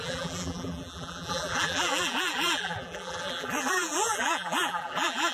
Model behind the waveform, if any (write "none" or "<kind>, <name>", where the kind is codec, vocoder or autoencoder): vocoder, BigVGAN v2